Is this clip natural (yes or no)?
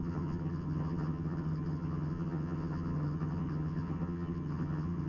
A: no